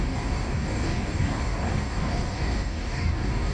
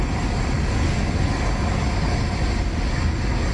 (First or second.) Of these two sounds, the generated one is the first